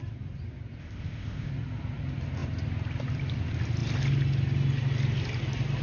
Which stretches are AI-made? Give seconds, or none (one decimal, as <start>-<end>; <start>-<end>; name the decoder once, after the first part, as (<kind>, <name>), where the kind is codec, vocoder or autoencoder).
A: 0.8-1.5 (codec, ZipCodec)